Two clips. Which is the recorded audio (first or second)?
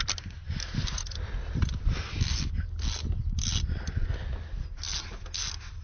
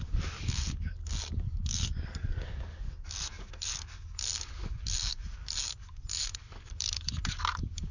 first